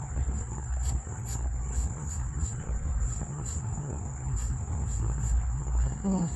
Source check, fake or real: fake